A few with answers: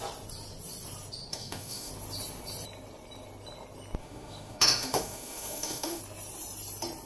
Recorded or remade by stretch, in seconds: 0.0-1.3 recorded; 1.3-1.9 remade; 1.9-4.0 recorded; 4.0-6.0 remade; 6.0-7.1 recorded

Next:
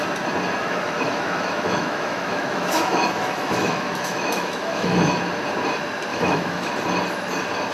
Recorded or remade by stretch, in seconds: 0.0-0.6 recorded; 0.6-5.2 remade; 5.2-6.1 recorded; 6.1-6.7 remade; 6.7-7.7 recorded

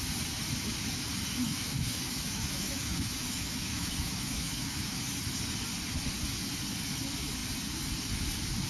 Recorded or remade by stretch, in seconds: 0.0-1.5 recorded; 1.5-5.0 remade; 5.0-8.7 recorded